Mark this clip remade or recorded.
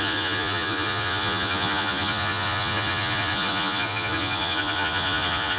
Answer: remade